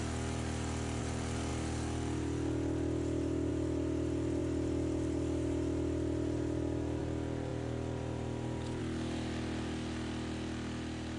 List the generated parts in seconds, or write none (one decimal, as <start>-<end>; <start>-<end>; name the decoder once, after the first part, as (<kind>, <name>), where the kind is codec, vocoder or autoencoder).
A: none